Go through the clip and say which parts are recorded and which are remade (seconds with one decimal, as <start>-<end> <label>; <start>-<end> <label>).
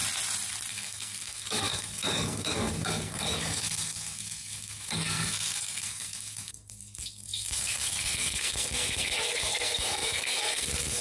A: 0.0-0.7 recorded; 0.7-11.0 remade